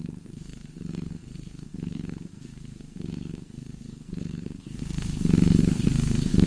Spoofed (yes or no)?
yes